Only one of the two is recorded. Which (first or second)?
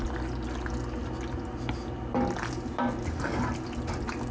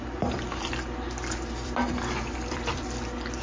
first